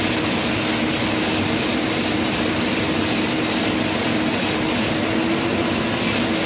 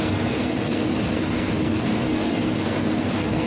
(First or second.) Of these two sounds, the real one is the first